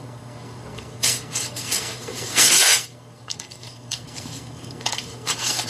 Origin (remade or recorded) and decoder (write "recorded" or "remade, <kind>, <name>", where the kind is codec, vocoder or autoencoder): remade, codec, SNAC